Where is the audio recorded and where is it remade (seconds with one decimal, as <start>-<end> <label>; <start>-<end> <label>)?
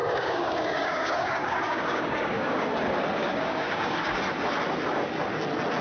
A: 0.0-2.7 remade; 2.7-3.2 recorded; 3.2-4.2 remade; 4.2-5.8 recorded